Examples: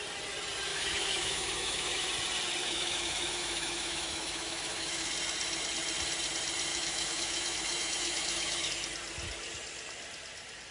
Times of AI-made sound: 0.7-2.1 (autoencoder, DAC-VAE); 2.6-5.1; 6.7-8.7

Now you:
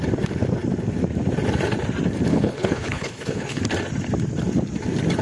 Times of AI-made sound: 2.3-3.6 (codec, HILCodec)

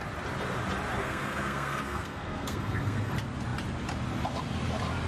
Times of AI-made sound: 1.0-3.1 (codec, SNAC)

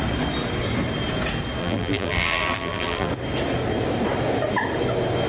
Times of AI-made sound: 1.6-3.1 (vocoder, BigVGAN v2)

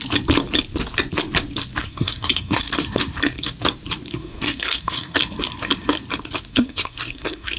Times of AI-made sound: 1.8-2.6 (codec, SNAC); 4.1-5.2; 6.5-7.6

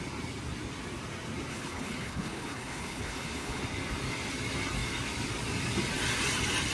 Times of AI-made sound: 1.5-3.6 (codec, HILCodec)